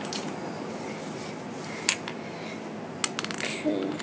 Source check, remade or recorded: recorded